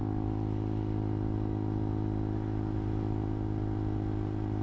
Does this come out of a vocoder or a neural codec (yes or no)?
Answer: no